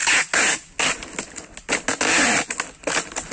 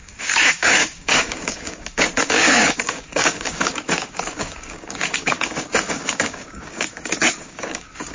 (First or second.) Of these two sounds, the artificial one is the second